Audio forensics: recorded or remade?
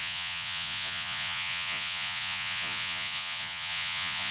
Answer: remade